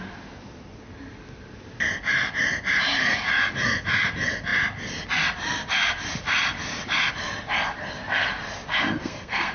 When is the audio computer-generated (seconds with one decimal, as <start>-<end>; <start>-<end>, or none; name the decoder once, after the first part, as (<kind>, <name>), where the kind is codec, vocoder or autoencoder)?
8.7-9.5 (codec, SNAC)